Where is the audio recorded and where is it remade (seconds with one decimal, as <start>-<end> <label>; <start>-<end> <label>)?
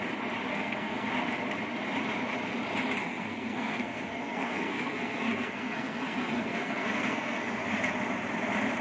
0.0-0.5 recorded; 0.5-1.1 remade; 1.1-3.0 recorded; 3.0-7.6 remade; 7.6-8.8 recorded